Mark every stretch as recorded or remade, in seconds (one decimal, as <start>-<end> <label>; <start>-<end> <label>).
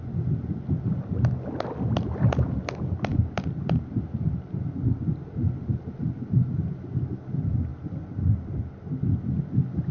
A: 0.0-9.9 recorded